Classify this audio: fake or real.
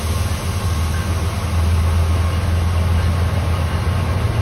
real